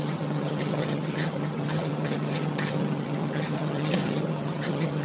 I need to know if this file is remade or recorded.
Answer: remade